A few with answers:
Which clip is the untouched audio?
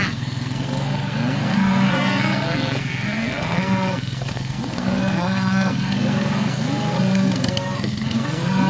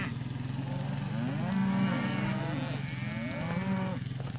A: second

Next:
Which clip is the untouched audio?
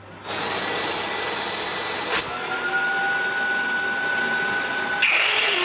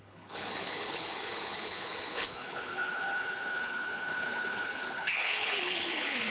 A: first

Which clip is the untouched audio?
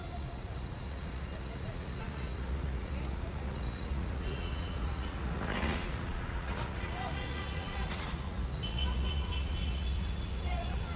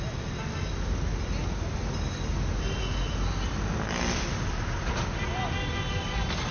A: second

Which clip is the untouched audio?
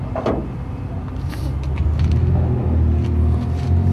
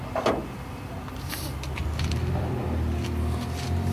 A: first